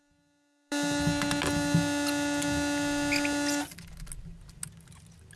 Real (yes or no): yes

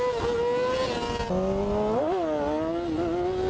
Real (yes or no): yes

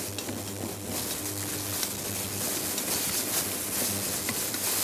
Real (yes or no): yes